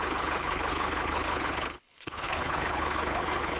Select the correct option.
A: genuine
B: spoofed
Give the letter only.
B